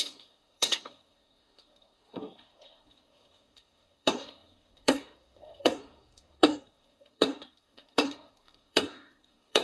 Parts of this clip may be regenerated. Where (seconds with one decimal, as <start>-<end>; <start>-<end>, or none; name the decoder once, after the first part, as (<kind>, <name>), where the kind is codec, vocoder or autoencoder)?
0.0-9.6 (codec, SNAC)